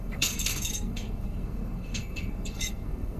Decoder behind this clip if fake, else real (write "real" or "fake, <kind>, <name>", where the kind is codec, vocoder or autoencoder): fake, codec, SNAC